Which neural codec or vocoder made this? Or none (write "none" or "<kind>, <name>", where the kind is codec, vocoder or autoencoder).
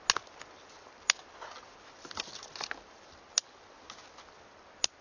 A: none